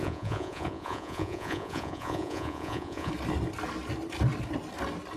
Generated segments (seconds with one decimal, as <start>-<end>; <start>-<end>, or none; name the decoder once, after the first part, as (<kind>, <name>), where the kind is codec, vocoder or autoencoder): 0.0-3.1 (vocoder, Vocos)